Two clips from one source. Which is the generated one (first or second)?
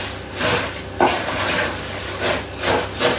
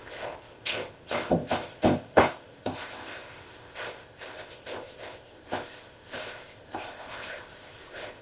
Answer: second